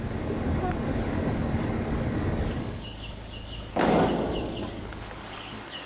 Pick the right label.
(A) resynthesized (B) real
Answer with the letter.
A